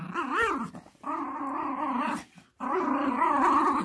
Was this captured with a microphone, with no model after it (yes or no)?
yes